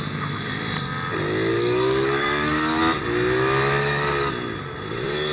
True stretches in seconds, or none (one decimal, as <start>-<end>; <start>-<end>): 0.0-1.5; 2.8-3.8; 4.3-5.3